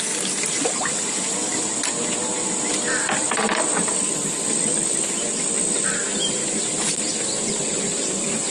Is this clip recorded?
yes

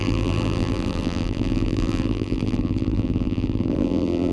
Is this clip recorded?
no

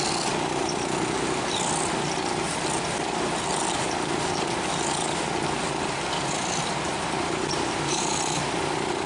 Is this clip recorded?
yes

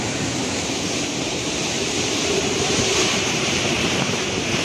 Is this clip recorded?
no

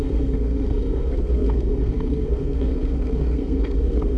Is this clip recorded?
no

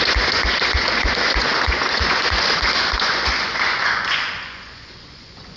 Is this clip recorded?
no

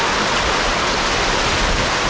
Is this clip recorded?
yes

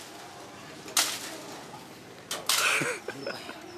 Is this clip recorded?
yes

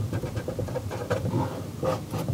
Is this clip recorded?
yes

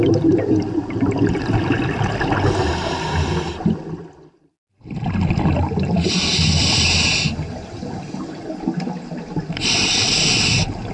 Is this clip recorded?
yes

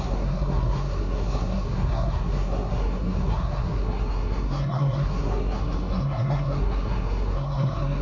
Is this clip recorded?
no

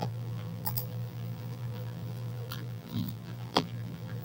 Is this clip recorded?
no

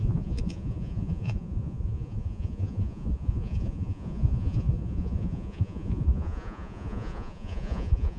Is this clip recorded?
no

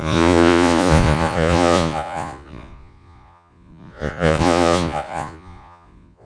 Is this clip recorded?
no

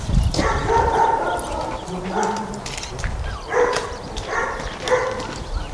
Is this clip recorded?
yes